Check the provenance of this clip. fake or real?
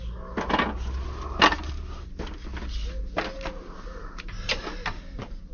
real